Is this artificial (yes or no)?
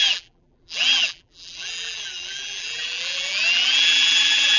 yes